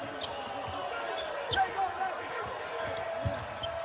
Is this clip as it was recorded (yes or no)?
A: yes